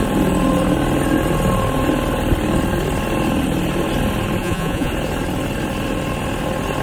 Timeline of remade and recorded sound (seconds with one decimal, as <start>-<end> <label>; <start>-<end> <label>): 0.0-4.4 recorded; 4.4-4.9 remade; 4.9-6.8 recorded